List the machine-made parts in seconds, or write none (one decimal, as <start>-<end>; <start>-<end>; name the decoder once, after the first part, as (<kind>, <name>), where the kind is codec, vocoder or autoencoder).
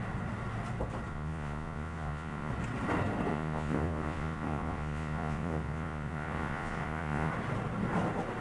1.1-2.5 (vocoder, Vocos); 3.3-7.3